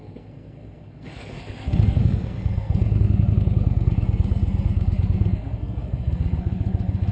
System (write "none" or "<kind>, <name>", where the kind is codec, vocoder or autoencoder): codec, SNAC